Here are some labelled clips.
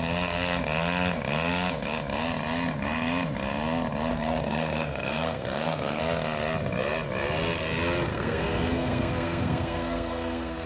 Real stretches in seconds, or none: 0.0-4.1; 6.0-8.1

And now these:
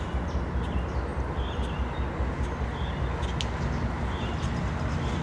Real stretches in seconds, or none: 0.0-5.2

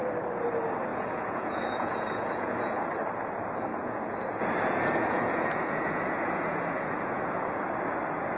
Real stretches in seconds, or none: 0.0-0.9; 2.8-3.7; 7.7-8.4